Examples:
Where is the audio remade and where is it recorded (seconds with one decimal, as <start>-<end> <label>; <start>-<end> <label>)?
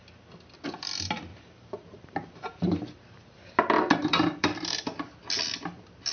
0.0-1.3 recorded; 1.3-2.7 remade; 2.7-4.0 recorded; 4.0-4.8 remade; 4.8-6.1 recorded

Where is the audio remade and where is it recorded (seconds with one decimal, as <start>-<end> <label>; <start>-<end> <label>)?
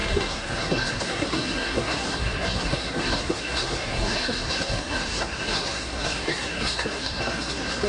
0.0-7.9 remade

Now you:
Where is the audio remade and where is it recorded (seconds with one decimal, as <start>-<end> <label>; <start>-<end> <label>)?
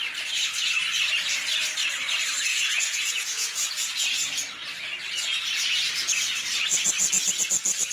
0.0-2.5 recorded; 2.5-3.7 remade; 3.7-7.9 recorded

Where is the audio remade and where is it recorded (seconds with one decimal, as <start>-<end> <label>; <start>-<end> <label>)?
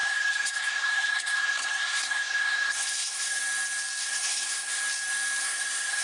0.0-3.4 remade; 3.4-4.0 recorded; 4.0-4.8 remade; 4.8-5.4 recorded; 5.4-6.0 remade